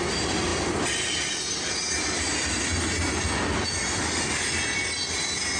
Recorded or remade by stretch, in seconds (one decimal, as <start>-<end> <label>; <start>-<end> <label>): 0.0-5.6 recorded